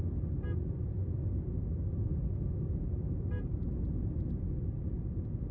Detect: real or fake real